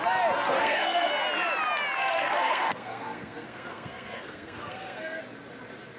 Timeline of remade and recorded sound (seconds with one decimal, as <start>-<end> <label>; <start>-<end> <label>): 0.0-0.6 recorded; 0.6-1.1 remade; 1.1-2.0 recorded; 2.0-5.2 remade; 5.2-6.0 recorded